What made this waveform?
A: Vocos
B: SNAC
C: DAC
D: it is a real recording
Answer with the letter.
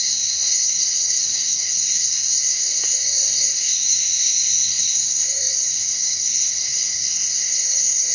B